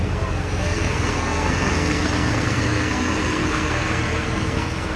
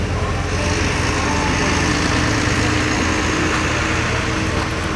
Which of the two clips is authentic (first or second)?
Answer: second